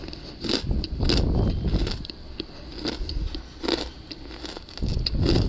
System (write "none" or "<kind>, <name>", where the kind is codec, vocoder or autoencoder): none